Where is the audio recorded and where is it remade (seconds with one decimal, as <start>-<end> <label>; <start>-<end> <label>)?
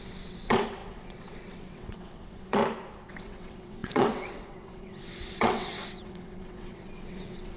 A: 0.0-2.6 remade; 2.6-3.1 recorded; 3.1-7.6 remade